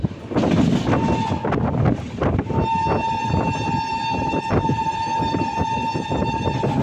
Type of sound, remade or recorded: recorded